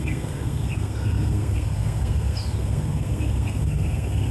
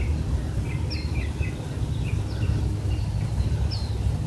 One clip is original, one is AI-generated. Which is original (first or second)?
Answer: second